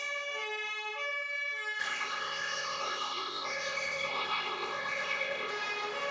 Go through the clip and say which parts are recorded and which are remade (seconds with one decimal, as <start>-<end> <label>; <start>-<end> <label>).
0.0-1.8 recorded; 1.8-5.5 remade; 5.5-6.1 recorded